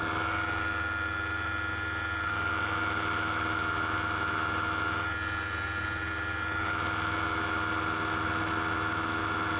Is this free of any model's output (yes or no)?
yes